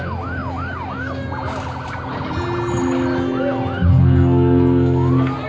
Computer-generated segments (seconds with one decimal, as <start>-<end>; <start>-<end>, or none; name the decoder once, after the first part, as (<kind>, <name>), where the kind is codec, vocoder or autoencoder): 3.9-5.1 (codec, SNAC)